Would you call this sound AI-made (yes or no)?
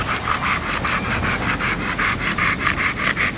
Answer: no